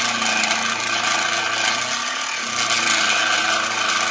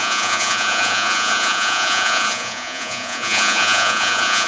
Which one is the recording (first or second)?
first